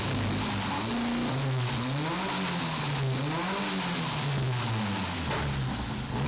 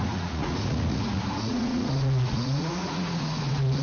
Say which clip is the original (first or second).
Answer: first